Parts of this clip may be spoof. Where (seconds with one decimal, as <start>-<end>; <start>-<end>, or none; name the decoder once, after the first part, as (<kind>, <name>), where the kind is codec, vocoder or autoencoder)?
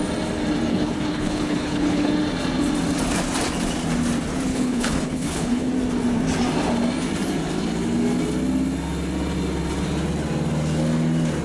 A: 0.7-2.1 (codec, HILCodec); 4.5-5.7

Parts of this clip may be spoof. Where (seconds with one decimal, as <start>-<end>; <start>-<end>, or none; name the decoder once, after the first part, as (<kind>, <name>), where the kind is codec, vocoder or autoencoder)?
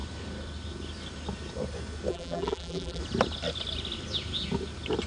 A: 2.1-3.0 (vocoder, BigVGAN v2)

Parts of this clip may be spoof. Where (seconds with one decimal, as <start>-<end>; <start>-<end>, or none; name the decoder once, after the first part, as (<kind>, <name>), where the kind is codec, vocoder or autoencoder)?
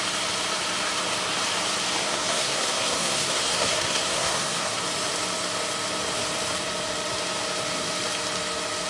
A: 2.0-4.8 (codec, SNAC)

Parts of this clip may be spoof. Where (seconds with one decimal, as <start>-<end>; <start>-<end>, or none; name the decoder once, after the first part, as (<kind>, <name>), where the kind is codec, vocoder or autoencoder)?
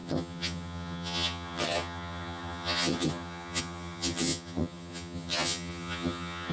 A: 0.0-6.5 (vocoder, HiFi-GAN)